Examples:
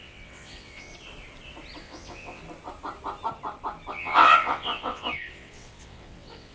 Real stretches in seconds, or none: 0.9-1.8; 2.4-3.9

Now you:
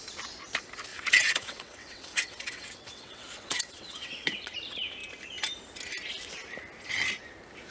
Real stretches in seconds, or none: 0.0-0.9; 4.5-7.7

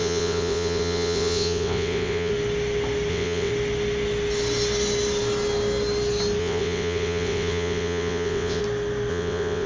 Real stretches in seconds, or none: 2.3-3.1; 3.5-6.4; 8.6-9.1

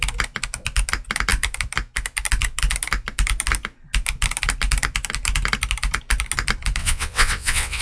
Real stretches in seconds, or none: 0.0-6.8

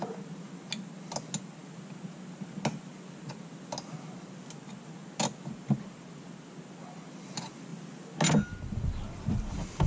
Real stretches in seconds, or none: 0.0-9.9